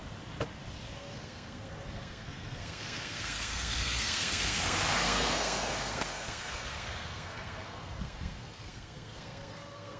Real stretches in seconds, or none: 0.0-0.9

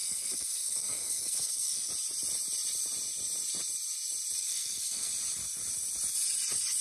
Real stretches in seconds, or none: 1.9-4.4; 5.1-6.8